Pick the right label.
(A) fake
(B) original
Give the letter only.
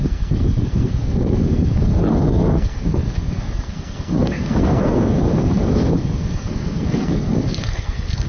A